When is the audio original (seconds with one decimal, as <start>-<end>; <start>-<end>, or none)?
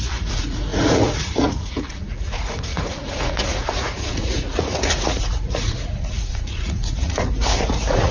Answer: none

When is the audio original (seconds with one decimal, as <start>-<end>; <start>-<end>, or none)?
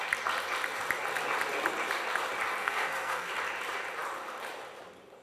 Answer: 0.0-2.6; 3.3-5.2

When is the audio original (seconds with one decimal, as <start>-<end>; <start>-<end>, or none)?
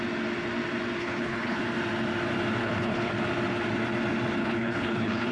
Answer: 0.0-1.0; 1.6-2.6; 3.1-4.4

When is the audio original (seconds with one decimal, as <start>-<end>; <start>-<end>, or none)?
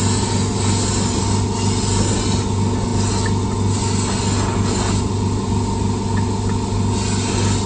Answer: 0.0-7.7